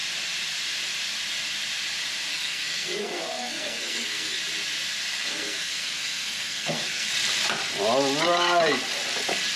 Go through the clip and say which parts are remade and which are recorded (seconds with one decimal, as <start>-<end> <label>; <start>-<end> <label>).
0.0-2.3 recorded; 2.3-4.4 remade; 4.4-5.2 recorded; 5.2-7.1 remade; 7.1-9.6 recorded